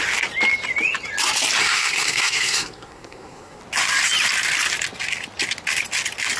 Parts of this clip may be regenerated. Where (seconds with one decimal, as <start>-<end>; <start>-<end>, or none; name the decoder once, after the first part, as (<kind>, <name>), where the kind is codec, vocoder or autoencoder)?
1.6-3.6 (codec, SNAC)